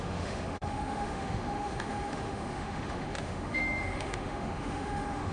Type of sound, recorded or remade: remade